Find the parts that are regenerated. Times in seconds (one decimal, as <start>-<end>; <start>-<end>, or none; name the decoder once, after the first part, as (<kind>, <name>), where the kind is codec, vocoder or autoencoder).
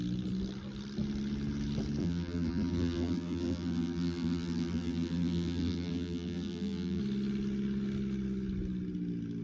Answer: 2.0-7.0 (vocoder, BigVGAN v2)